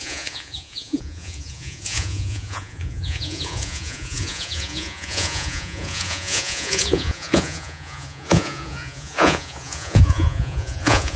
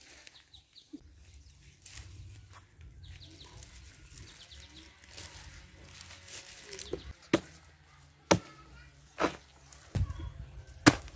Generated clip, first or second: first